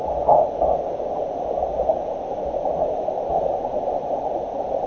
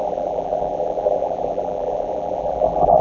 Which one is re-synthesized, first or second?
second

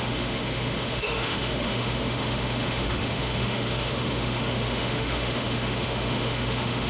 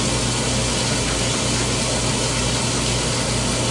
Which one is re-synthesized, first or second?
first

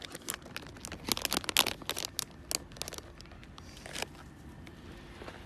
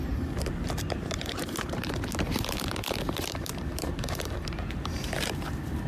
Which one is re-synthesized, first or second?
second